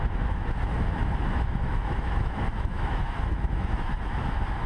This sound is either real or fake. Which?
fake